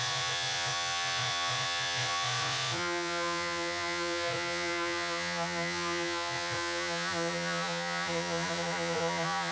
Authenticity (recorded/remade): remade